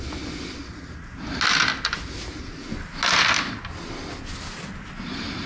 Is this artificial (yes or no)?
no